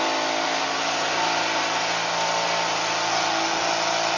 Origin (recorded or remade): recorded